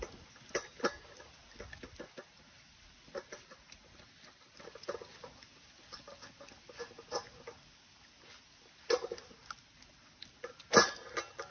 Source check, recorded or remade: recorded